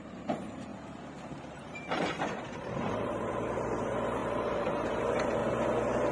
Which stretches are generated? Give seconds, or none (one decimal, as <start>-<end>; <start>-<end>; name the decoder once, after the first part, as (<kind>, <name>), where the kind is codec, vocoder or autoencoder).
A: 0.0-0.7 (vocoder, BigVGAN v2); 1.5-5.4